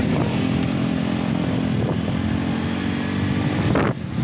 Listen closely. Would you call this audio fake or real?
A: real